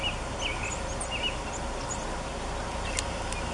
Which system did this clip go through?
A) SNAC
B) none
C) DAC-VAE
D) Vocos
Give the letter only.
B